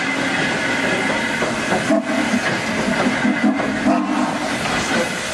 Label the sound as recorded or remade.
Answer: recorded